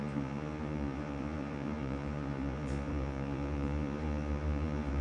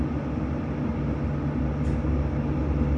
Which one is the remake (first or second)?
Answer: first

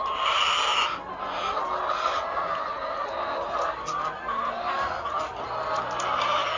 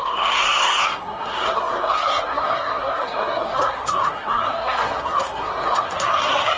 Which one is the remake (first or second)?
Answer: second